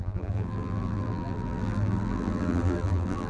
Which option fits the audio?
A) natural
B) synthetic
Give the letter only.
B